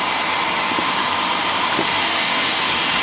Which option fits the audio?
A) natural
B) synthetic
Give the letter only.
A